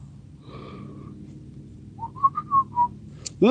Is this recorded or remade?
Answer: remade